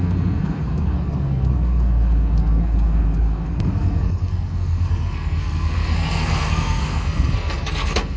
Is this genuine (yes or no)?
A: no